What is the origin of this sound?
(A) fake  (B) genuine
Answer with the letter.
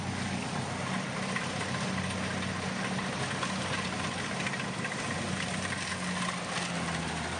B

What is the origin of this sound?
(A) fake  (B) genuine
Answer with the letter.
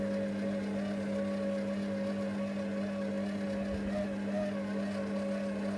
B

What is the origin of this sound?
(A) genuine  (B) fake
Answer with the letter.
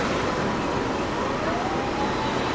B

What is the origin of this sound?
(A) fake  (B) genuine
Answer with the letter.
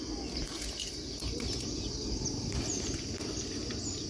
B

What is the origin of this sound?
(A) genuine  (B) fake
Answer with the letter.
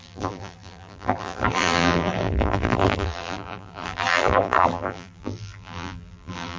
B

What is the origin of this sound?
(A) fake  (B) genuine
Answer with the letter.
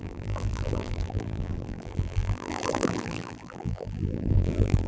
A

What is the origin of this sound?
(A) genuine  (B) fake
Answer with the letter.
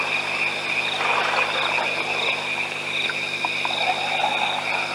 A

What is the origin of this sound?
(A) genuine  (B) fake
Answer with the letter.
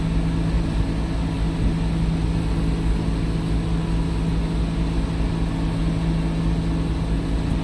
A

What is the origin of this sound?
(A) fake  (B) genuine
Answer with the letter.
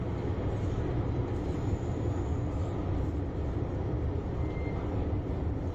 B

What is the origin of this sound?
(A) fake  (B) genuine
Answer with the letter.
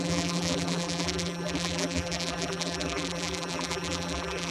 A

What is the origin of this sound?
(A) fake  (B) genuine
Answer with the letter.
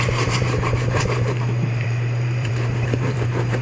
A